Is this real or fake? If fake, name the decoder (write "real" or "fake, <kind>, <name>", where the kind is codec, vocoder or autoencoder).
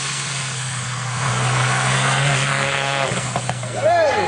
fake, codec, SNAC